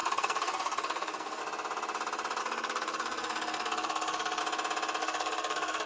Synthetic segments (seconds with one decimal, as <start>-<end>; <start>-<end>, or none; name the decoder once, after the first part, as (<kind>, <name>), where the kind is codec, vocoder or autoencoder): 0.0-1.4 (codec, SNAC); 2.4-4.4; 5.0-5.9